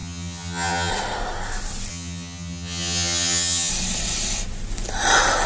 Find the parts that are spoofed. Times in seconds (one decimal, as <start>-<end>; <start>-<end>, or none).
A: 0.0-0.9; 1.9-3.7